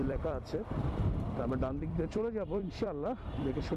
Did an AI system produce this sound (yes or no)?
yes